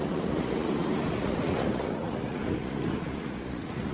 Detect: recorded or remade remade